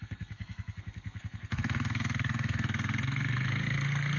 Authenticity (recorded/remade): remade